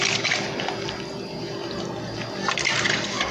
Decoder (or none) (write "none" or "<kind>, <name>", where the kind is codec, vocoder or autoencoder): none